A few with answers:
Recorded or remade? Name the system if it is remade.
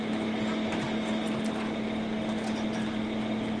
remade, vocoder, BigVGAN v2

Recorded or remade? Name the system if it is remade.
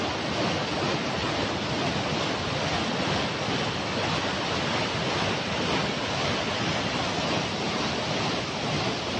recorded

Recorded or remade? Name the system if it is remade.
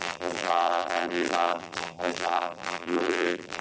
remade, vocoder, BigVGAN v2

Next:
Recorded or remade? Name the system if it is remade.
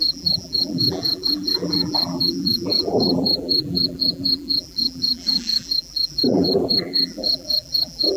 remade, vocoder, BigVGAN v2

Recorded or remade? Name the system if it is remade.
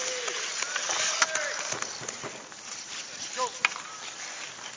recorded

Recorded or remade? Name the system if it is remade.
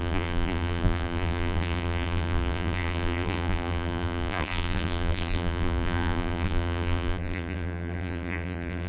remade, vocoder, BigVGAN v2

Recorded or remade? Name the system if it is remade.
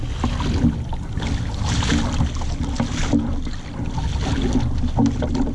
recorded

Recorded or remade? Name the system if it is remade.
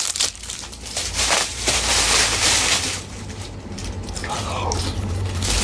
remade, vocoder, BigVGAN v2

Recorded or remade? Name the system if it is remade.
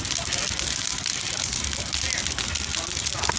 recorded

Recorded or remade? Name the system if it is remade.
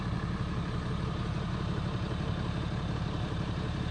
remade, vocoder, BigVGAN v2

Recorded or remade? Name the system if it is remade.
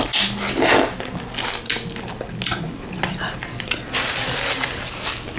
recorded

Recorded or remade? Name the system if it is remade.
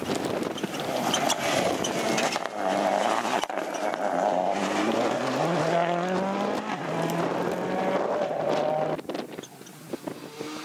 recorded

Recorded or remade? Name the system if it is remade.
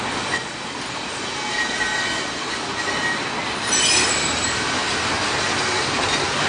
recorded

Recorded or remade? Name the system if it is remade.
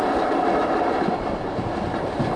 recorded